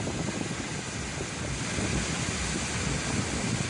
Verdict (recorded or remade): recorded